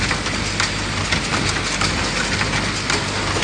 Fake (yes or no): no